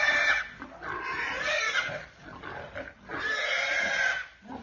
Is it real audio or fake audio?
real